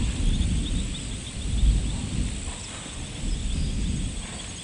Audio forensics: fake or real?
real